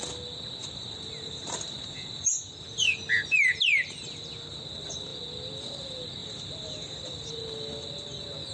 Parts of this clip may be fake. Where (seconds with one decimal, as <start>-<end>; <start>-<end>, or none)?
0.6-2.4; 6.2-7.3